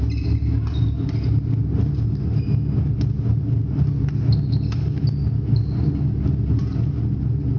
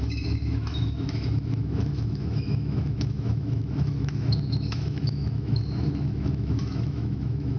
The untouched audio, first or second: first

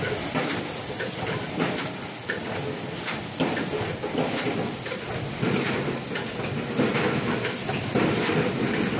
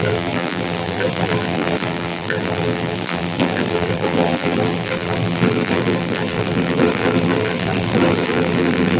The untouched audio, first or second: first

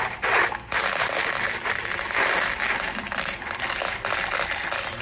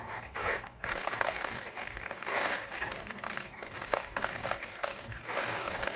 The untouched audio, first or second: first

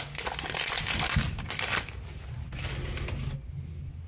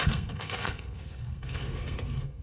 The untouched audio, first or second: first